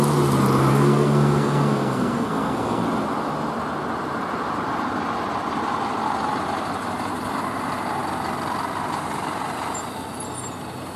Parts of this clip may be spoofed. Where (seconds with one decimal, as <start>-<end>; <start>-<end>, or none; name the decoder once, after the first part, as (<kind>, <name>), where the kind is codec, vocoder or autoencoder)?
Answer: 0.7-2.8 (codec, SNAC)